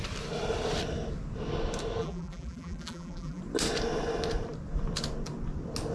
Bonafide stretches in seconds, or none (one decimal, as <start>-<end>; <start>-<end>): 0.0-2.0; 3.4-5.9